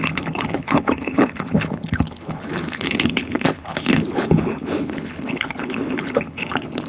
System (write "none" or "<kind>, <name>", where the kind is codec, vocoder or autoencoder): codec, HILCodec